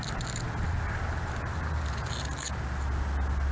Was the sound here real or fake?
real